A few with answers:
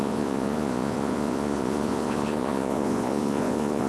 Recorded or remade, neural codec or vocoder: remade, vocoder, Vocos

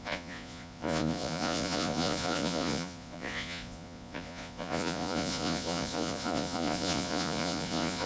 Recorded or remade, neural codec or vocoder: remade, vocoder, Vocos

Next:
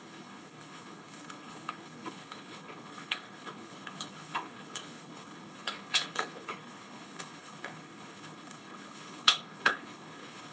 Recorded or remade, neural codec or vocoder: remade, codec, HILCodec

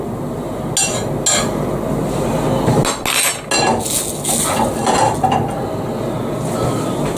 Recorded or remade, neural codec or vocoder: recorded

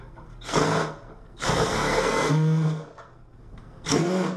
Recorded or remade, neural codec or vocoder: remade, codec, SNAC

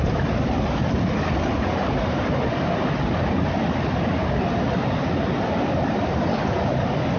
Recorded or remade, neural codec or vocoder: recorded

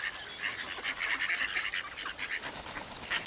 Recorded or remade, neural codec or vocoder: recorded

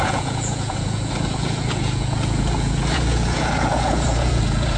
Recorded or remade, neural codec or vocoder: remade, vocoder, Vocos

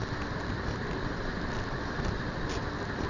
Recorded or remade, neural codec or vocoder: recorded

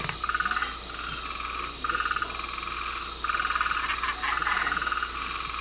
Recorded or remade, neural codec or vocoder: recorded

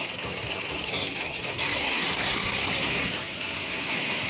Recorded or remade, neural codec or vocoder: remade, codec, SNAC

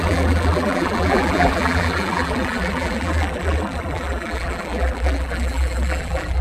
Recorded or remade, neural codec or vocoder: remade, vocoder, BigVGAN v2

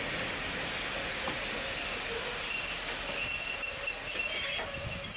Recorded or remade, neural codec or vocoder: recorded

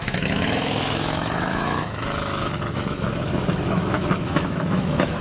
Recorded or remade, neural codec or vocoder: remade, autoencoder, DAC-VAE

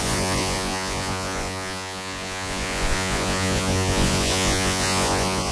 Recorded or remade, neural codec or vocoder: remade, vocoder, Vocos